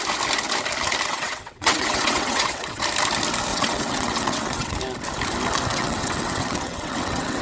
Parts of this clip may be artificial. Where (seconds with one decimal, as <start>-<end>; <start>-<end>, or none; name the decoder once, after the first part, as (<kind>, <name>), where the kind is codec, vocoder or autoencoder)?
1.1-2.8 (vocoder, WaveNeXt); 3.5-4.8; 5.7-7.4